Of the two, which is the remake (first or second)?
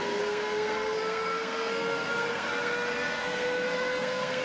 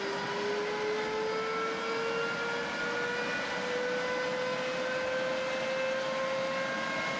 first